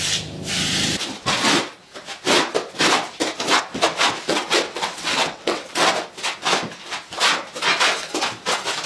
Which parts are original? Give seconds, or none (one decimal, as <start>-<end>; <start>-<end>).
0.0-4.3; 5.9-8.9